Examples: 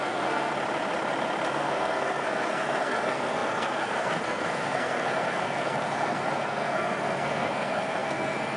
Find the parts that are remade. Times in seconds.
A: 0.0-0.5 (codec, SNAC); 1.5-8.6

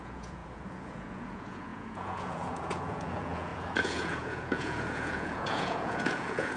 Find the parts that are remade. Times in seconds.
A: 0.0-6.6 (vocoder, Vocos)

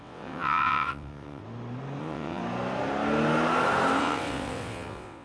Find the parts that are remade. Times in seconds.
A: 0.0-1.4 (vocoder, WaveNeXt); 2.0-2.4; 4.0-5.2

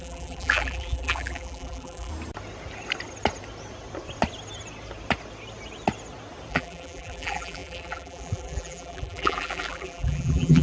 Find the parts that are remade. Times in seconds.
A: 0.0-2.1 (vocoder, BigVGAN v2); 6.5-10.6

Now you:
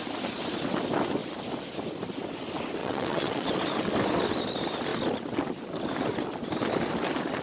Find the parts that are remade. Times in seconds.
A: 2.8-3.5 (vocoder, WaveNeXt)

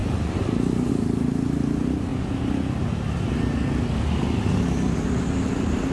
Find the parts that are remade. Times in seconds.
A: 0.0-0.9 (vocoder, BigVGAN v2)

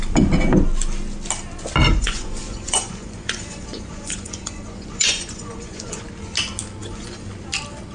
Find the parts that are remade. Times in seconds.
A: 1.9-6.0 (vocoder, Vocos); 6.8-7.3

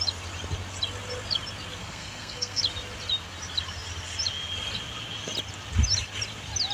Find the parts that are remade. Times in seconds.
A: 1.8-2.6 (codec, SNAC)